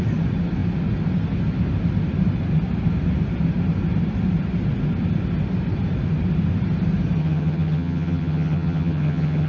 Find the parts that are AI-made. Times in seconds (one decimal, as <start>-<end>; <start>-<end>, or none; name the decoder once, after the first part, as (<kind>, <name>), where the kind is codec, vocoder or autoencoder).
7.2-9.5 (vocoder, HiFi-GAN)